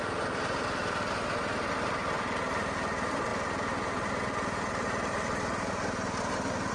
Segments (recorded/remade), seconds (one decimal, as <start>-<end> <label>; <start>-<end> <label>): 0.0-0.8 remade; 0.8-1.9 recorded; 1.9-3.3 remade; 3.3-6.7 recorded